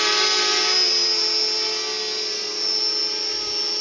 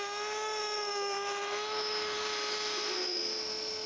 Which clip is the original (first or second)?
first